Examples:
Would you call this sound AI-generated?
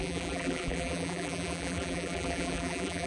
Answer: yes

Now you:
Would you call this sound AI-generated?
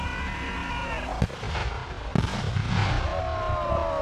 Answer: no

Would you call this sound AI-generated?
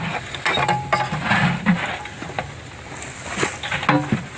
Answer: no